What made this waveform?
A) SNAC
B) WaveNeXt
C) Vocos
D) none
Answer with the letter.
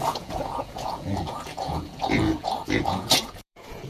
C